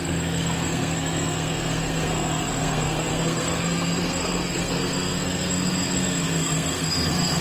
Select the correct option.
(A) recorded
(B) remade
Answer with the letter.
B